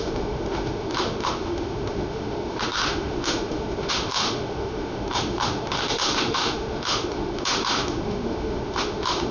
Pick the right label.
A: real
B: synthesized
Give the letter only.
B